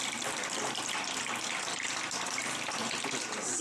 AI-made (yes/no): no